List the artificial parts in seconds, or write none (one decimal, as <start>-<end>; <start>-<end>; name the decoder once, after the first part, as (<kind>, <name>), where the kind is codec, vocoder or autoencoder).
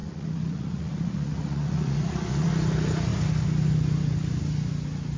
0.0-2.5 (vocoder, Vocos)